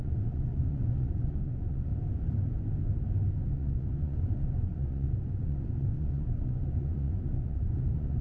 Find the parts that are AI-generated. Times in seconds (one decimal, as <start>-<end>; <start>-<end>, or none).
0.0-1.9; 3.5-8.2